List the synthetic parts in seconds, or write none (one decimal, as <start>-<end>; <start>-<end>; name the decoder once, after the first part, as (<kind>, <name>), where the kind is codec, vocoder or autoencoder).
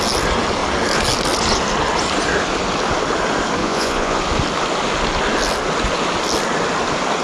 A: 3.6-4.2 (vocoder, Vocos)